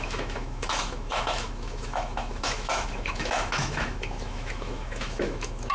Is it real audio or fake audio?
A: fake